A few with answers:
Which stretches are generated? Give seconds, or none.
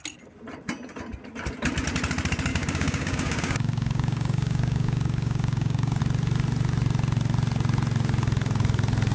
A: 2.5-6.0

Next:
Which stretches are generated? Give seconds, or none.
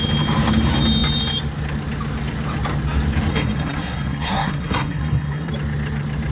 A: 3.3-5.5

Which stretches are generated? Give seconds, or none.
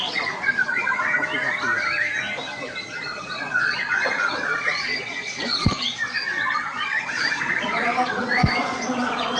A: 0.0-1.2; 2.9-9.4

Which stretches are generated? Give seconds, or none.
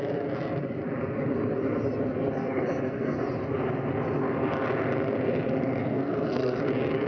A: 2.4-3.2; 5.9-6.6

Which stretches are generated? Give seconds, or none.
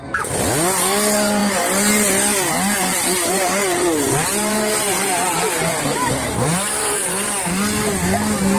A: 1.4-1.9; 2.9-7.7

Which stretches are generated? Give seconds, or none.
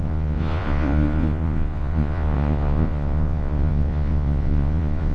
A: 0.0-5.1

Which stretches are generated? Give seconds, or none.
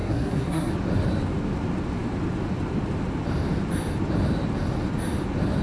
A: 0.0-0.7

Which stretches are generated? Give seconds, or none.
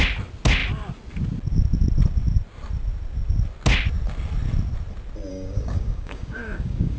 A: 5.3-7.0